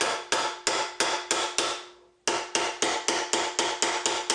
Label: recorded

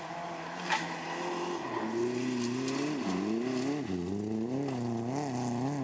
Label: recorded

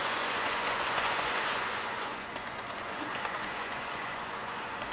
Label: remade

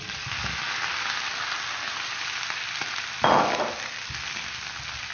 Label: recorded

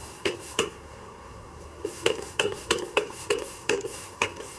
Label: remade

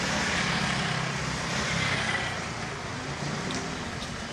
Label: remade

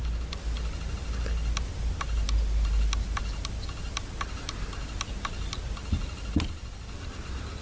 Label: recorded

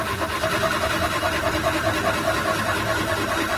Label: recorded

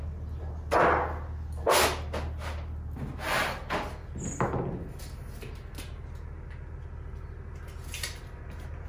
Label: recorded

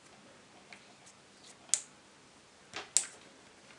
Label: recorded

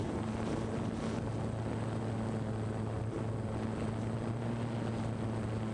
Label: recorded